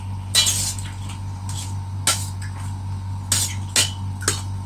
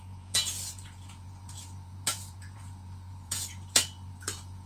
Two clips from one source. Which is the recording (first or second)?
first